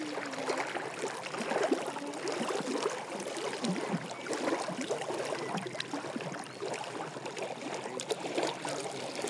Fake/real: real